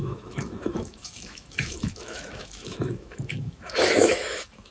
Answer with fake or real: fake